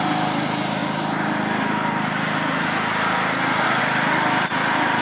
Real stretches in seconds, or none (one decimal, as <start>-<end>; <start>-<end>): 0.0-5.0